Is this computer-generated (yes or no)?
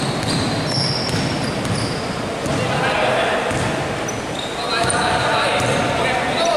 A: yes